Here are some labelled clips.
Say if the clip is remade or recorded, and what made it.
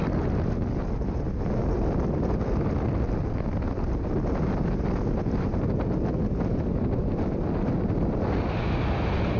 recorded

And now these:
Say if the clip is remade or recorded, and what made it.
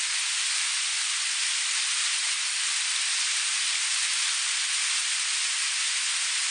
recorded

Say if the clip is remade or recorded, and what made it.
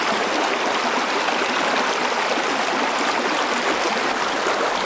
recorded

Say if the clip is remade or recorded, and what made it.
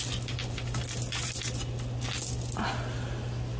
recorded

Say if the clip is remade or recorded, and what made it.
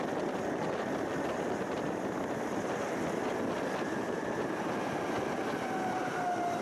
recorded